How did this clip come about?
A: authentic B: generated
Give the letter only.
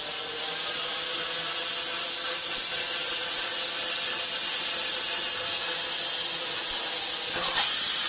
A